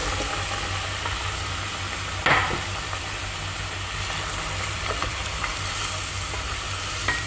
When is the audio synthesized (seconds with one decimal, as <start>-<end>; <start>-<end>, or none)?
4.4-7.3